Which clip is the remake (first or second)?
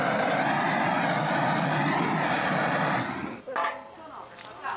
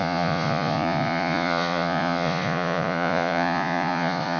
second